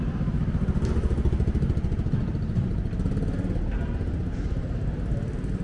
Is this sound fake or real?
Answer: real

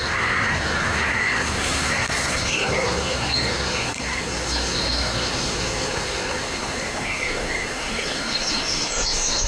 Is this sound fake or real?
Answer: fake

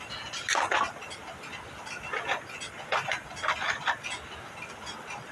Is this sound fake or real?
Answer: real